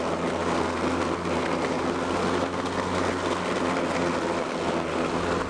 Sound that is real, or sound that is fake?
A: real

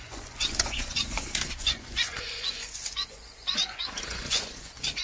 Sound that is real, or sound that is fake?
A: fake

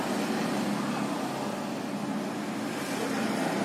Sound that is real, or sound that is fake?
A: real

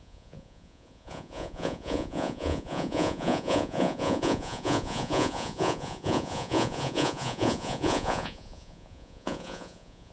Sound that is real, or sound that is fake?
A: fake